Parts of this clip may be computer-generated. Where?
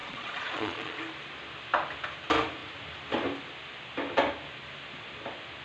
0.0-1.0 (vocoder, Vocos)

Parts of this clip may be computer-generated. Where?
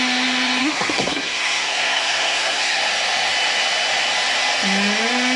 0.6-2.8 (codec, SNAC)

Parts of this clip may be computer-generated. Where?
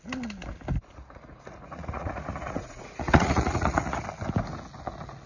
0.8-4.0 (vocoder, Vocos)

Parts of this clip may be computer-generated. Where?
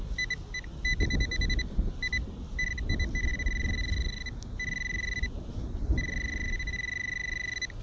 none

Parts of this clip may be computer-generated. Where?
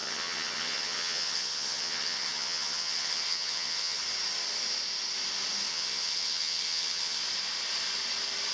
0.0-4.0 (vocoder, HiFi-GAN); 5.7-7.2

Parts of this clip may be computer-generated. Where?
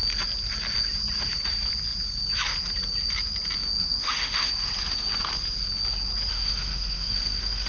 3.8-4.5 (autoencoder, DAC-VAE); 6.3-7.7